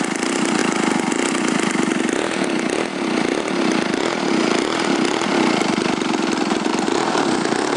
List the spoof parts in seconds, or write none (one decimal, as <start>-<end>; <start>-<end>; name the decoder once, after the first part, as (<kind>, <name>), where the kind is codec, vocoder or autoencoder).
none